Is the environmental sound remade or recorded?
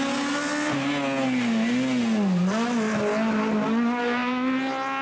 recorded